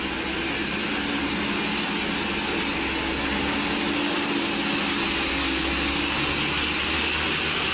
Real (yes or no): yes